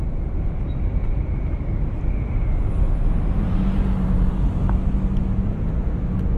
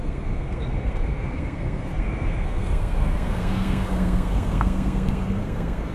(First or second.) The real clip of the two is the first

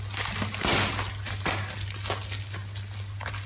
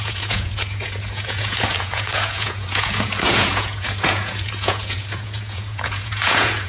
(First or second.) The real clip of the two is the first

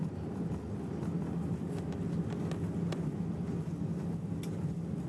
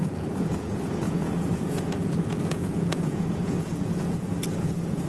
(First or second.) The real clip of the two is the first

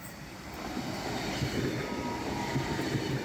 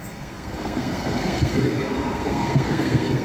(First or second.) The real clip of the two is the first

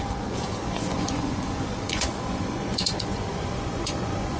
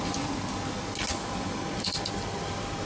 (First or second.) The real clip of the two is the second